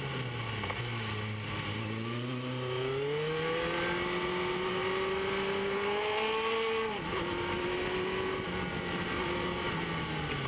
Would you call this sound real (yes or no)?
yes